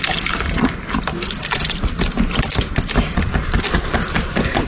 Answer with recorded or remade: recorded